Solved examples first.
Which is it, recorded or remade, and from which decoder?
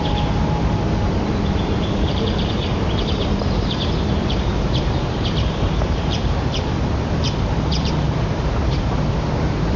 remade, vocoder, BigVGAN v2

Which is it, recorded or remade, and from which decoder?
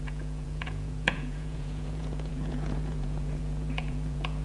remade, vocoder, Vocos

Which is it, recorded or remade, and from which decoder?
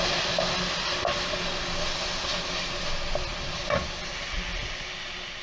recorded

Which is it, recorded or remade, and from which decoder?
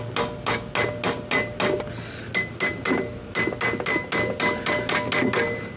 recorded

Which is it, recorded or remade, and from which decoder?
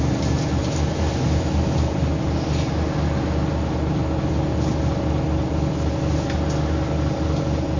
recorded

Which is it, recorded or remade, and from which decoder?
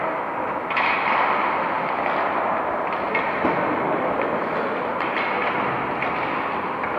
recorded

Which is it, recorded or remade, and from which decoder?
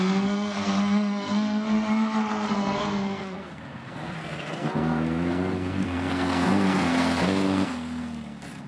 remade, codec, SNAC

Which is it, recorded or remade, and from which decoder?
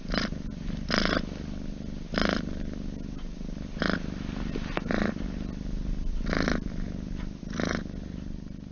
recorded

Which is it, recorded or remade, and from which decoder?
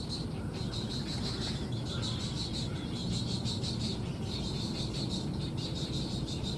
recorded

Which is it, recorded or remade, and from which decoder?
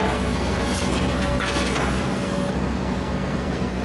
remade, codec, SNAC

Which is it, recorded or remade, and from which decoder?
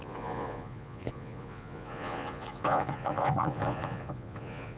remade, vocoder, Vocos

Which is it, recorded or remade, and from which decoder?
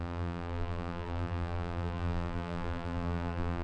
remade, vocoder, BigVGAN v2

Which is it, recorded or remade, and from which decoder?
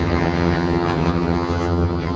remade, vocoder, HiFi-GAN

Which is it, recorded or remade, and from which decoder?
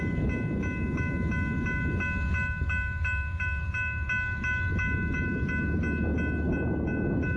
recorded